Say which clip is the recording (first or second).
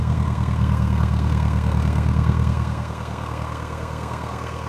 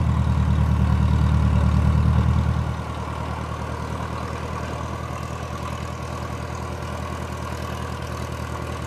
second